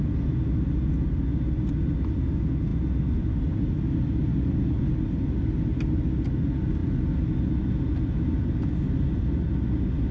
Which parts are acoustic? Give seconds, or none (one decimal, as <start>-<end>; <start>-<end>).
0.0-10.1